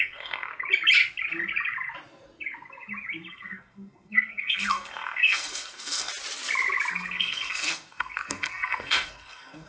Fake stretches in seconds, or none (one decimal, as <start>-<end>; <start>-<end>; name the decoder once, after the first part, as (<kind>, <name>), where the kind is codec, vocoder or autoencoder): 0.0-0.5 (codec, SNAC); 3.3-6.1; 6.9-9.7